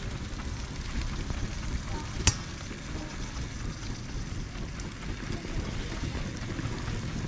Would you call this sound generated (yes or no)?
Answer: no